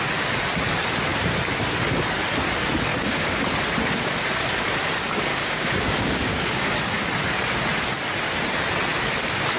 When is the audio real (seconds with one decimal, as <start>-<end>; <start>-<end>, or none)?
0.0-2.9; 3.4-5.3; 7.0-9.6